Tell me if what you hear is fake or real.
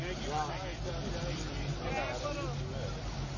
real